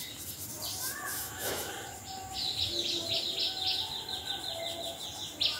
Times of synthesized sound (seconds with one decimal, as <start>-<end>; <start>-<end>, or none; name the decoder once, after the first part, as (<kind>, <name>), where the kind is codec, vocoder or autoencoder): 1.1-1.7 (autoencoder, DAC-VAE)